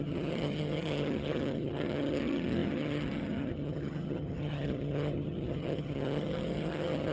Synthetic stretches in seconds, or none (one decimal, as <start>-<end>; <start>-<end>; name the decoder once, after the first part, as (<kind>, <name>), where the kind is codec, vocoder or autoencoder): 0.0-7.1 (vocoder, HiFi-GAN)